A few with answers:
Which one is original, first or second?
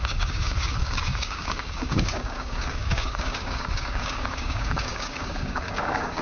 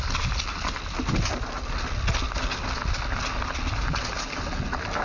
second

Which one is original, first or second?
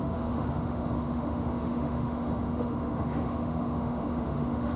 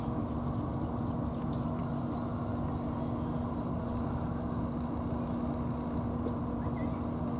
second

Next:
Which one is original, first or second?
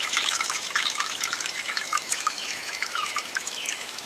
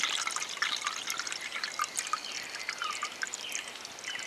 second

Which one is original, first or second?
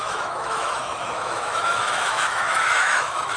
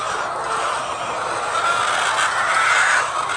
second